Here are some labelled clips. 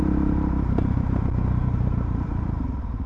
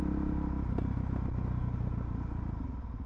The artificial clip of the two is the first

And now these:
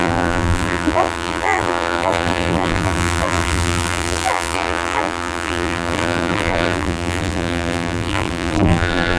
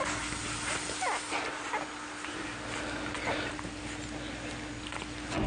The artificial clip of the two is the first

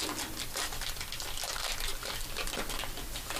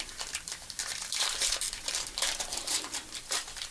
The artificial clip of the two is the second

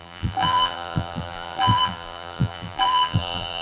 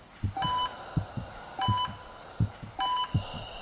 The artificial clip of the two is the first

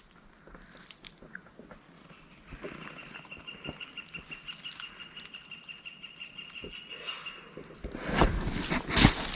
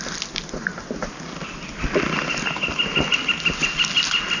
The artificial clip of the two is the first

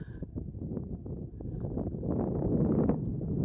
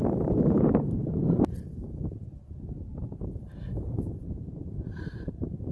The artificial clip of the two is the second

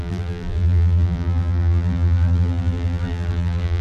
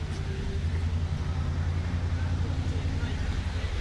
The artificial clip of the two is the first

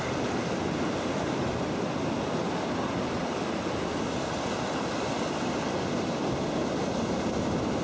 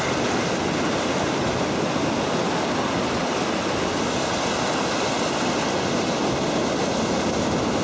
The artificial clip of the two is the first